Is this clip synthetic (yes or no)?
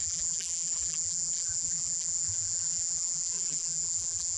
yes